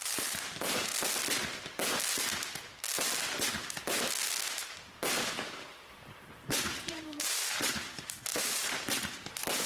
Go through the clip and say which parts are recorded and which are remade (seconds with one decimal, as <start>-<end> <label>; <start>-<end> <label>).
0.0-0.9 remade; 0.9-5.6 recorded; 5.6-9.7 remade